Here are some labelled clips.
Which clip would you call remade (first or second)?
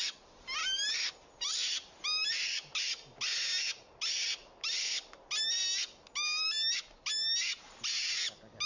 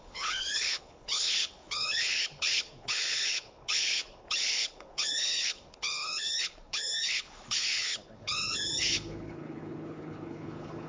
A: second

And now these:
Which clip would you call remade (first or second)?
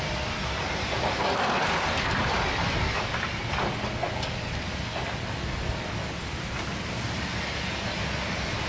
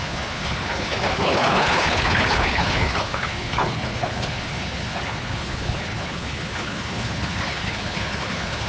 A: second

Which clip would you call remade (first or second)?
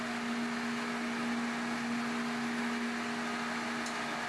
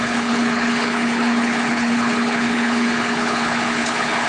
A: second